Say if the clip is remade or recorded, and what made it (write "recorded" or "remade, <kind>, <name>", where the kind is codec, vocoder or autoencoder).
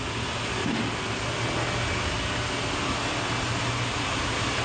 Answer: recorded